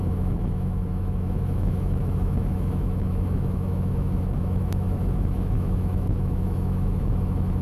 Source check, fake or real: fake